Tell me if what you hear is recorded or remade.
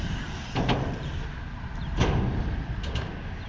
recorded